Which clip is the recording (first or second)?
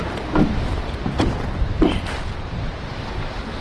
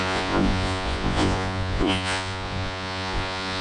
first